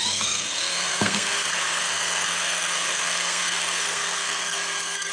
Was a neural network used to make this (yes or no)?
yes